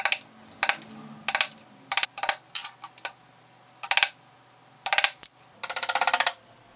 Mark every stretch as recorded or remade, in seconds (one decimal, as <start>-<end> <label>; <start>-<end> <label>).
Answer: 0.0-6.8 recorded